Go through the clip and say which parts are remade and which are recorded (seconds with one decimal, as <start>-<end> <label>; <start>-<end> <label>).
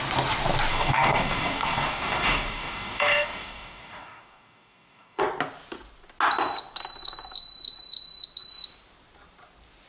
0.0-0.7 recorded; 0.7-5.2 remade; 5.2-9.9 recorded